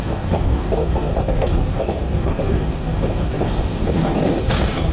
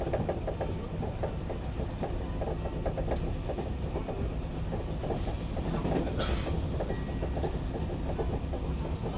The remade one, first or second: first